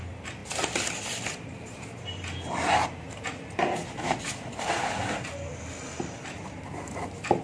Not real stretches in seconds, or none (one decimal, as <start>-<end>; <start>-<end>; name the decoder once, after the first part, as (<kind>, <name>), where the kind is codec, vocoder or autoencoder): none